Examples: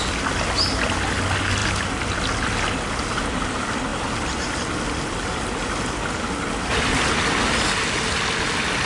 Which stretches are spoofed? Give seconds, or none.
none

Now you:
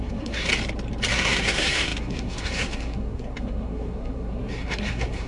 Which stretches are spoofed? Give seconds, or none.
0.0-0.5 (codec, SNAC); 1.1-5.3

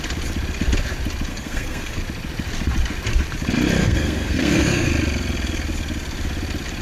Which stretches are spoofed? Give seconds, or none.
1.3-2.0 (codec, SNAC); 3.8-4.9

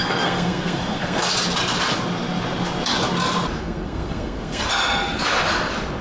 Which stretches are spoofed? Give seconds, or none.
0.0-1.3 (codec, SNAC); 3.6-4.7

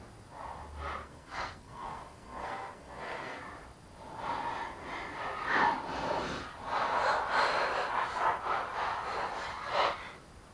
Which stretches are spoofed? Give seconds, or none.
1.0-3.4 (codec, SNAC)

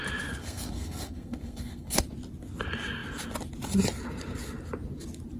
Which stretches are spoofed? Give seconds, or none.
0.4-2.0 (codec, SNAC)